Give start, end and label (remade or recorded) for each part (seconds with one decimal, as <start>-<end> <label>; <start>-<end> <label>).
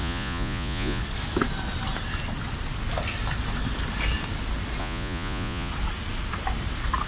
0.0-1.0 remade; 1.0-4.8 recorded; 4.8-5.7 remade; 5.7-7.1 recorded